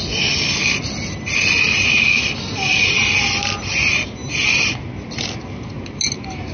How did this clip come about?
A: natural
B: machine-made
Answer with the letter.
A